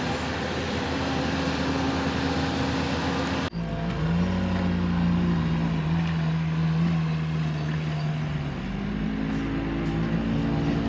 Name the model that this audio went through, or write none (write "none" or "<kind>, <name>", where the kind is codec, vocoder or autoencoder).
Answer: none